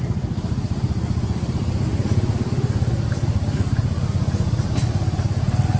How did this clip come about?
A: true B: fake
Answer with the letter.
A